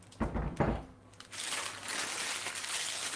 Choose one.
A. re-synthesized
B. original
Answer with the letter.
B